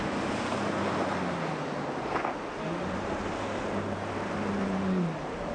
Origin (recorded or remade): recorded